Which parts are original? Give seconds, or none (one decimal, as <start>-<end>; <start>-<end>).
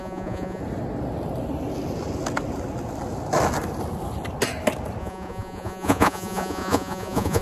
0.6-5.0